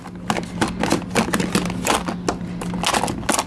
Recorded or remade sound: recorded